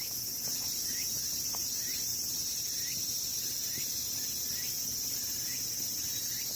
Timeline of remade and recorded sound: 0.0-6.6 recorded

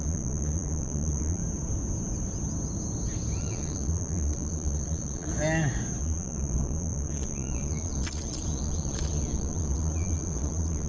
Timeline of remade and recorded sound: 0.0-1.4 remade; 1.4-3.4 recorded; 3.4-5.3 remade; 5.3-6.0 recorded; 6.0-10.9 remade

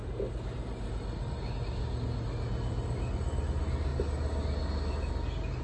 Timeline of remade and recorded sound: 0.0-5.6 recorded

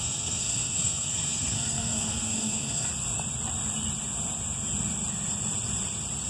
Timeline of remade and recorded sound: 0.0-2.9 remade; 2.9-6.3 recorded

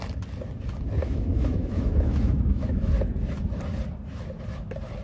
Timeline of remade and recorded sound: 0.0-1.0 recorded; 1.0-2.9 remade; 2.9-5.0 recorded

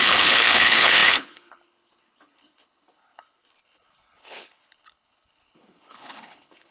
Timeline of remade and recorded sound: 0.0-6.7 remade